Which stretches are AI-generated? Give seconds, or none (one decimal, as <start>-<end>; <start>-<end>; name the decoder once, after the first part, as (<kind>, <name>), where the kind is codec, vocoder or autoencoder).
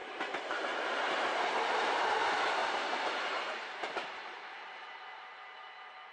0.0-2.2 (vocoder, BigVGAN v2); 2.6-6.1